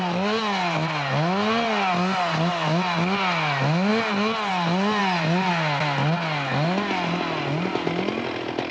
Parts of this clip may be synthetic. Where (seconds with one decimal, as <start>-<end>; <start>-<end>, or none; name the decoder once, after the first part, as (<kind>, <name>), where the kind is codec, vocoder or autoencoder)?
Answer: none